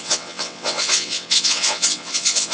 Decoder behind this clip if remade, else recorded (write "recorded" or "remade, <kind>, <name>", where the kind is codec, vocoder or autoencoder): remade, vocoder, WaveNeXt